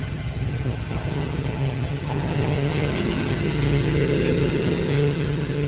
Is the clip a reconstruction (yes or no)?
yes